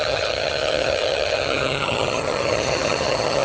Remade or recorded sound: remade